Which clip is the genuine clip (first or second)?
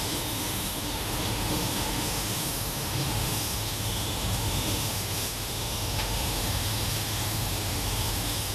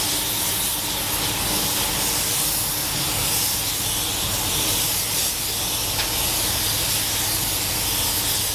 second